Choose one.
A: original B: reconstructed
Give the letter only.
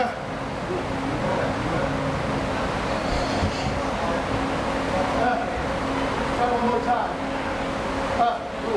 A